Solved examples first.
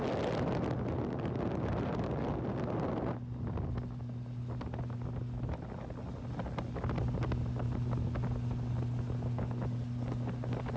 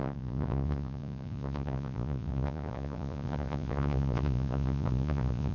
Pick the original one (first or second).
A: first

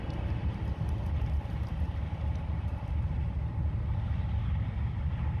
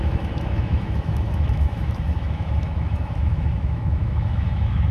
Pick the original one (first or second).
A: first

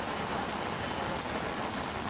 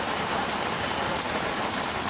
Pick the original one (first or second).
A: first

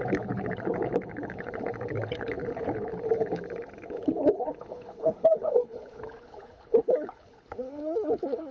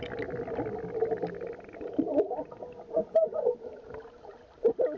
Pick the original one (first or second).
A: second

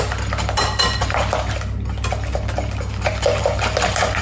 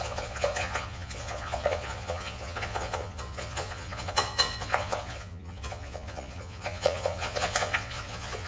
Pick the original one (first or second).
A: first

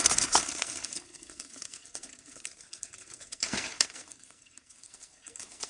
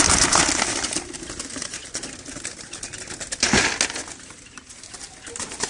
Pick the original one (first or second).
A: second